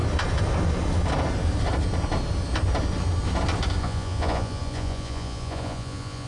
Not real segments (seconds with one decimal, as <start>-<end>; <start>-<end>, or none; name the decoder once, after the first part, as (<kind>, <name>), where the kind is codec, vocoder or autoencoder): 3.8-6.3 (vocoder, Vocos)